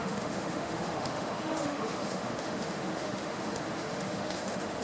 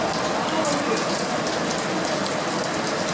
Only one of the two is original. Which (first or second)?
second